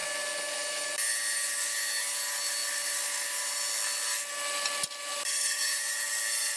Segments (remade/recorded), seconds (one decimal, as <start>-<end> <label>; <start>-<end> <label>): 0.0-6.6 recorded